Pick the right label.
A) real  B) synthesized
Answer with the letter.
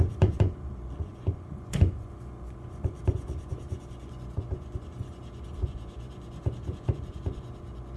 B